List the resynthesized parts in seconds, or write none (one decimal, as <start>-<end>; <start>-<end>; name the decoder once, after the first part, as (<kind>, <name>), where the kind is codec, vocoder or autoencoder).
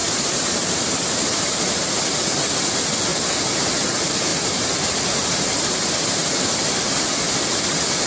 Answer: 0.0-1.9 (vocoder, BigVGAN v2); 3.1-3.7; 4.3-6.8